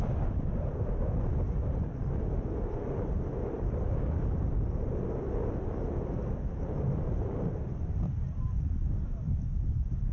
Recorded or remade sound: remade